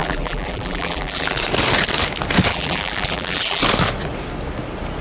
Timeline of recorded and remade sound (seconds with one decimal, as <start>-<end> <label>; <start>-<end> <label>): 0.0-1.4 remade; 1.4-2.5 recorded; 2.5-3.6 remade; 3.6-5.0 recorded

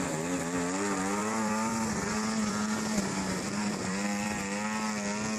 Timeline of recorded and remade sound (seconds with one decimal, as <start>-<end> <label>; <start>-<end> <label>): 0.0-1.2 recorded; 1.2-4.4 remade; 4.4-5.4 recorded